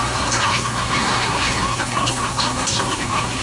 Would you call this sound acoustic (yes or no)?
no